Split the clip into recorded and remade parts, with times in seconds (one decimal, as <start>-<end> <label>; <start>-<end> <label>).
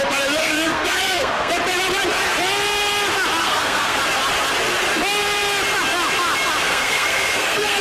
0.0-0.4 recorded; 0.4-1.5 remade; 1.5-3.4 recorded; 3.4-4.0 remade; 4.0-6.6 recorded; 6.6-7.8 remade